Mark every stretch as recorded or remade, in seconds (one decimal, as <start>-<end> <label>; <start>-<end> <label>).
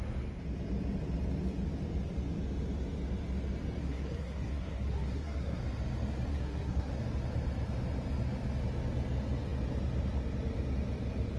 0.0-3.8 recorded; 3.8-5.6 remade; 5.6-6.3 recorded; 6.3-6.9 remade; 6.9-11.4 recorded